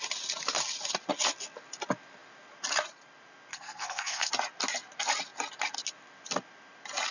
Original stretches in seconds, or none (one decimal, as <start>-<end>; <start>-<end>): 0.0-3.5; 4.3-7.1